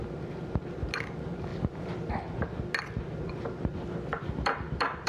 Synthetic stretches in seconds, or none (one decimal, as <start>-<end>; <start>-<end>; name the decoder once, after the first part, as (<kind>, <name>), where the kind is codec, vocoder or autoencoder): 1.5-2.1 (vocoder, BigVGAN v2); 3.7-5.1